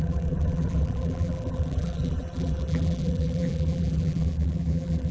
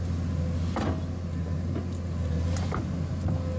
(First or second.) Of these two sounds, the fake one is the first